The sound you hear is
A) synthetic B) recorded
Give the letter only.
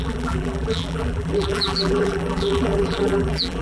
A